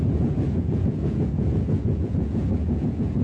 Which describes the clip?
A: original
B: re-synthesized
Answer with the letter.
B